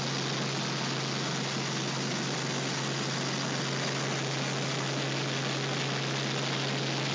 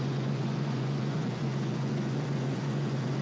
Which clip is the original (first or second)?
first